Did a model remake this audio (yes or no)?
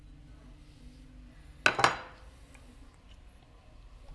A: no